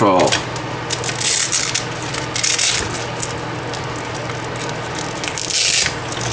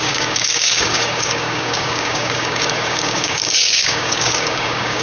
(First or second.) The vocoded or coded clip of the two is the second